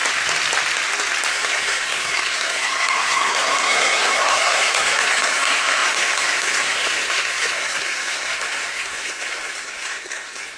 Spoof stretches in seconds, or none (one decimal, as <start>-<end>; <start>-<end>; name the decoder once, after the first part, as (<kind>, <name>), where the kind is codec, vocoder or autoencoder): 1.3-10.6 (codec, SNAC)